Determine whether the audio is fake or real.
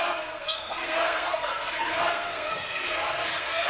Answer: fake